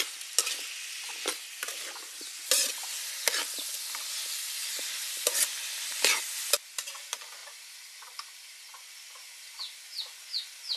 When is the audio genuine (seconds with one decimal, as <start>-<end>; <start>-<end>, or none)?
0.0-7.4; 8.9-10.8